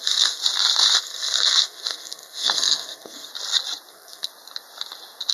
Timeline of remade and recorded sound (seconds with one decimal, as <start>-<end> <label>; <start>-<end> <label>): 0.0-0.4 remade; 0.4-1.0 recorded; 1.0-3.3 remade; 3.3-3.9 recorded; 3.9-4.3 remade; 4.3-5.3 recorded